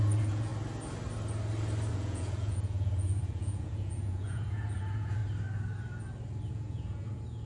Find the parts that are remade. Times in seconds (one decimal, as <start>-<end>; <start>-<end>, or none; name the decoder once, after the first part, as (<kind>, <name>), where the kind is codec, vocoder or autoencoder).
0.0-0.5 (vocoder, Vocos); 1.9-5.2; 6.5-7.5

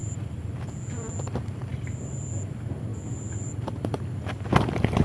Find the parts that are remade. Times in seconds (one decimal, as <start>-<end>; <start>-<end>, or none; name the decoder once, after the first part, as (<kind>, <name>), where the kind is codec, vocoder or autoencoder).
0.0-0.5 (vocoder, BigVGAN v2); 1.7-2.3; 2.9-3.5

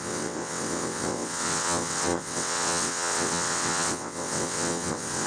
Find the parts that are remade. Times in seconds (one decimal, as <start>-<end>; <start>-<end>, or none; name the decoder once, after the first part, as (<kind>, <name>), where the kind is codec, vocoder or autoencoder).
0.0-5.3 (vocoder, WaveNeXt)

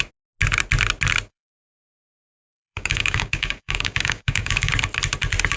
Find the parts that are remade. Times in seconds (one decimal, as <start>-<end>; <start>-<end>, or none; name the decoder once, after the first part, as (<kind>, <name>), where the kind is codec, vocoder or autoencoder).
1.3-4.7 (codec, DAC)

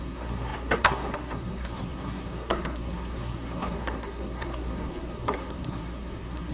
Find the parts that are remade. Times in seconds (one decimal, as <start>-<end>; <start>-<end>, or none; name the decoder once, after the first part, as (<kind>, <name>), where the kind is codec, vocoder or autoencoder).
0.0-6.5 (codec, SNAC)

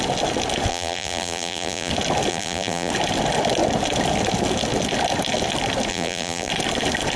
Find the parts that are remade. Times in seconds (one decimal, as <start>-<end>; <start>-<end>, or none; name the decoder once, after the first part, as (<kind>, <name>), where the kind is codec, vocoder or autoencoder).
0.7-1.9 (vocoder, BigVGAN v2); 2.3-2.9; 5.9-6.5

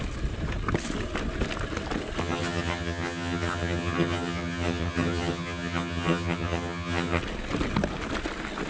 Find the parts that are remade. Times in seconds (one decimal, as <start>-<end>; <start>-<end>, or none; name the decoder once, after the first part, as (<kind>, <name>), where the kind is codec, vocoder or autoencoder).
2.2-7.2 (vocoder, HiFi-GAN)

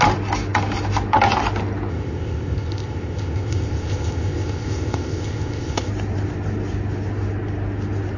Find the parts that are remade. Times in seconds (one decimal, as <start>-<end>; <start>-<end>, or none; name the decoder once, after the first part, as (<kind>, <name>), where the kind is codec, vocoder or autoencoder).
1.9-5.9 (codec, ZipCodec)